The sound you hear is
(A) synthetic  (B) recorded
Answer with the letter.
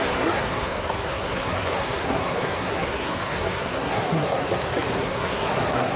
A